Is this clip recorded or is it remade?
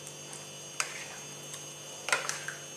recorded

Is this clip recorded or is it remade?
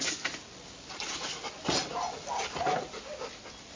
recorded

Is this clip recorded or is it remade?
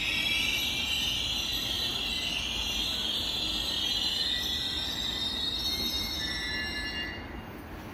recorded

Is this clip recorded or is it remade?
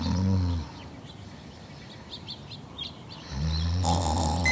recorded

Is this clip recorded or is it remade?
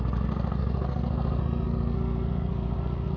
remade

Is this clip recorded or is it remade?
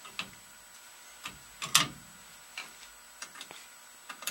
recorded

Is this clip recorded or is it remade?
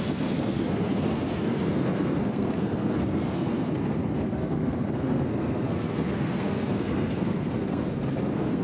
remade